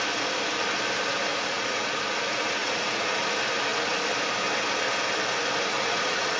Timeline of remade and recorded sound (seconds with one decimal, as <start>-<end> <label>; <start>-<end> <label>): 0.0-1.3 recorded; 1.3-2.0 remade; 2.0-2.6 recorded; 2.6-3.1 remade; 3.1-5.7 recorded; 5.7-6.4 remade